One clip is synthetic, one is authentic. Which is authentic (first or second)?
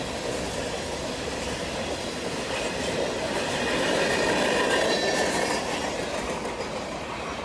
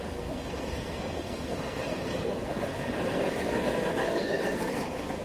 first